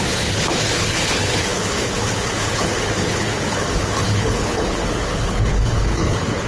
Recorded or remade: remade